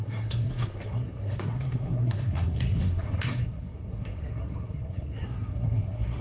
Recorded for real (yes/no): no